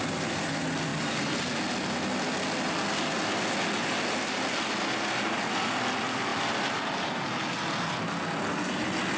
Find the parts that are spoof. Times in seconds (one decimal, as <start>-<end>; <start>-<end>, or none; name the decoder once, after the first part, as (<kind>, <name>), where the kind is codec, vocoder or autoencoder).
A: none